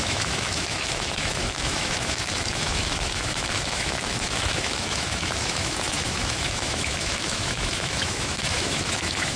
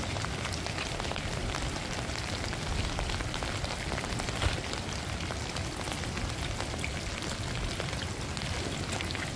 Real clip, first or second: second